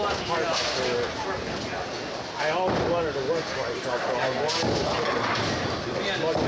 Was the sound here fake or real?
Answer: real